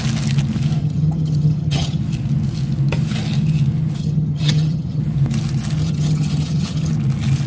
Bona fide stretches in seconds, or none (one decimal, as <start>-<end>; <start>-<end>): 0.0-0.8; 2.0-4.0; 5.0-5.8; 6.9-7.5